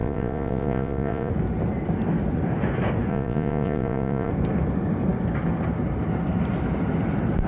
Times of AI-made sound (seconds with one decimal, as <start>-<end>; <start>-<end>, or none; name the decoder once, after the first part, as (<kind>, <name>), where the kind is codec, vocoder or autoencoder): 0.0-1.3 (vocoder, Vocos); 3.1-4.3